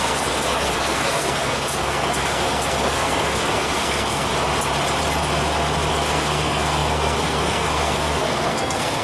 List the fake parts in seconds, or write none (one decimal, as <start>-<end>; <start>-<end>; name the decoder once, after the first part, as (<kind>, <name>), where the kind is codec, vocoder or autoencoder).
0.0-4.3 (codec, SNAC); 5.9-9.0